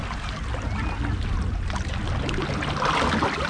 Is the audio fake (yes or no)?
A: no